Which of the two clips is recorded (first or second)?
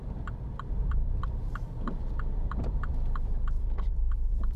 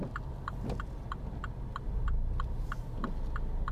second